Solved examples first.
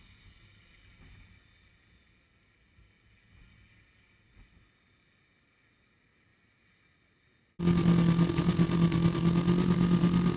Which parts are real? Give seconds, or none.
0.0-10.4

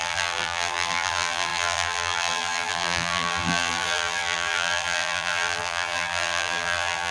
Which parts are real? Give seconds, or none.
none

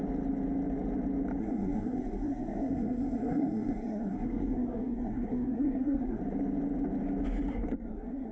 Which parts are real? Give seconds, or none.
0.0-1.4; 6.2-7.5

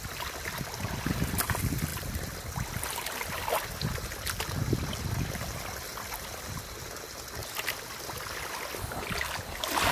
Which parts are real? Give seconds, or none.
0.0-9.9

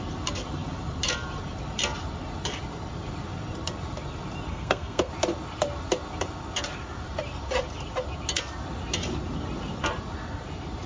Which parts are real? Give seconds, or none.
0.0-4.5; 5.1-10.9

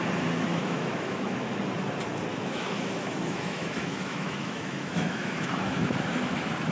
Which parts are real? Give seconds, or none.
0.0-0.5; 1.6-2.3; 6.3-6.7

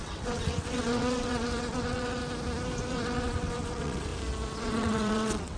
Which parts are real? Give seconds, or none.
2.2-2.9; 4.1-4.6